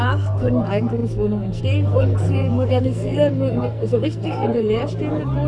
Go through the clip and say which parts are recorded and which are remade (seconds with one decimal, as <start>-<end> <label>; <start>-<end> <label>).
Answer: 0.0-4.8 remade; 4.8-5.5 recorded

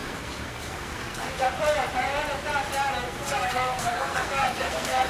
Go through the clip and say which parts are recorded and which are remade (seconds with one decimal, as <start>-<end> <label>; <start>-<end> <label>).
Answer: 0.0-1.5 remade; 1.5-3.0 recorded; 3.0-5.1 remade

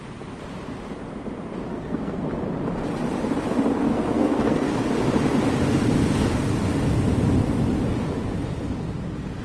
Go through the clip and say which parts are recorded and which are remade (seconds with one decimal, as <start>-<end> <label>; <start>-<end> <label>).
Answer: 0.0-1.7 recorded; 1.7-2.3 remade; 2.3-3.9 recorded; 3.9-4.7 remade; 4.7-9.4 recorded

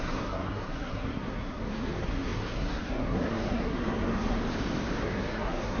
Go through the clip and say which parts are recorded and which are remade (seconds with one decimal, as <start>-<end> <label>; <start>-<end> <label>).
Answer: 0.0-4.4 remade; 4.4-5.0 recorded; 5.0-5.8 remade

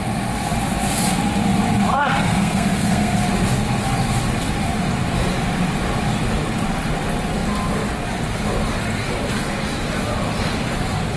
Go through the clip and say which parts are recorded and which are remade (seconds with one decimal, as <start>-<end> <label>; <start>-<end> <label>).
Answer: 0.0-1.9 recorded; 1.9-3.2 remade; 3.2-11.2 recorded